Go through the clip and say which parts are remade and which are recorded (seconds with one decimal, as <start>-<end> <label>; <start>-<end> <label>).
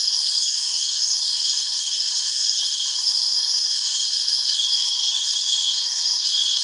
0.0-6.6 remade